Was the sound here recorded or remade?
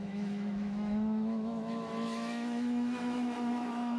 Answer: remade